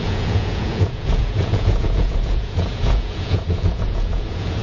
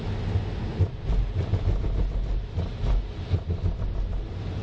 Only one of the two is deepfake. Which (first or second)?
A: first